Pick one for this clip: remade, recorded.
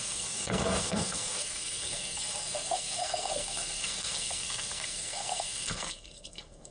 remade